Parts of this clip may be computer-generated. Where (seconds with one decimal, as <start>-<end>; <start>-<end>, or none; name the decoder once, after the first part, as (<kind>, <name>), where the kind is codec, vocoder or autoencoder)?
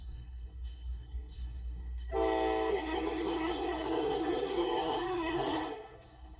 0.0-2.1 (codec, SNAC); 2.7-6.4